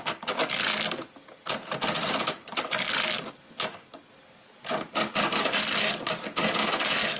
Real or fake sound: real